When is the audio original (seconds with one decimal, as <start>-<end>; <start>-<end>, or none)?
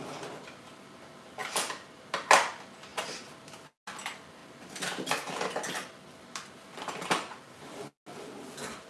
0.0-8.9